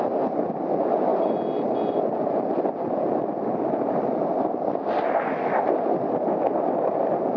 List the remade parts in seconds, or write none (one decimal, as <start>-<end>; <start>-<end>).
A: none